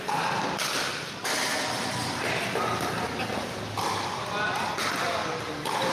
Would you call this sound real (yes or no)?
yes